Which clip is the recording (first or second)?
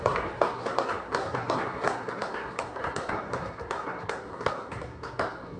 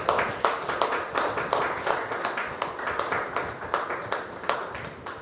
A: second